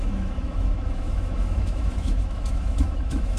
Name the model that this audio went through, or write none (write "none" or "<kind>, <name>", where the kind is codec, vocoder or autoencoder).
autoencoder, DAC-VAE